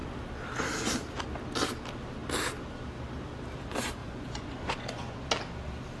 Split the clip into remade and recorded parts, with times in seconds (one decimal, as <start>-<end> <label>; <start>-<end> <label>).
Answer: 0.0-4.0 recorded; 4.0-5.2 remade; 5.2-6.0 recorded